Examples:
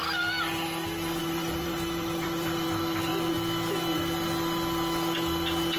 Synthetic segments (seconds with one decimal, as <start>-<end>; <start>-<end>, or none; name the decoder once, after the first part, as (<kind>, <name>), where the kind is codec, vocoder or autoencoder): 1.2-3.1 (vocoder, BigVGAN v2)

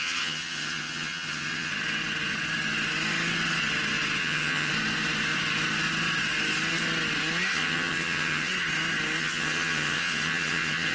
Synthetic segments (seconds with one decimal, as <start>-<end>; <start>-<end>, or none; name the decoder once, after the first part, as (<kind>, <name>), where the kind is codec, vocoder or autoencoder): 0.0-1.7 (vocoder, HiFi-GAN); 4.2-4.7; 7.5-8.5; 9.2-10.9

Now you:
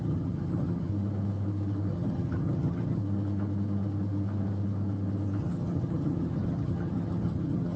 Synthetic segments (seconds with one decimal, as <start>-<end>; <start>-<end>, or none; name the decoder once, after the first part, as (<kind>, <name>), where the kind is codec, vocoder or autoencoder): 0.0-0.9 (vocoder, HiFi-GAN); 1.9-3.0; 5.4-7.8

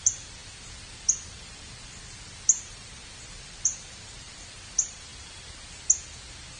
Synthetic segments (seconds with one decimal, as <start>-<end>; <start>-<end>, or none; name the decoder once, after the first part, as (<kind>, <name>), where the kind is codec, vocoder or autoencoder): 0.0-0.4 (vocoder, BigVGAN v2); 1.0-5.1

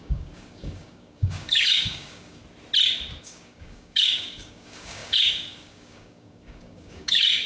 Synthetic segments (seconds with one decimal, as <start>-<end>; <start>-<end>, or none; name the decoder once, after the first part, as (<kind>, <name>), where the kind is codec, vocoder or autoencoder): 0.0-2.4 (codec, DAC); 3.2-7.5

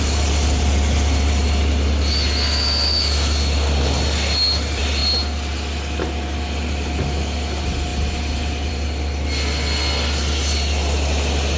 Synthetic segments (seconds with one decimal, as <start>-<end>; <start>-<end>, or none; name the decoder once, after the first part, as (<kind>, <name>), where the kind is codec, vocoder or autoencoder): none